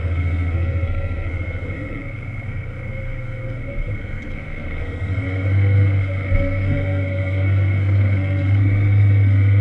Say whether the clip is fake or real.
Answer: fake